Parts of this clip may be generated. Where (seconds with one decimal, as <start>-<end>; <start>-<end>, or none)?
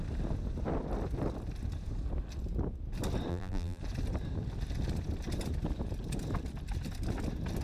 3.3-3.8